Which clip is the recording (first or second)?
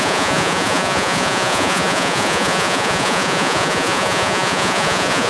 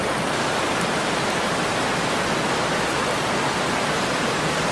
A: second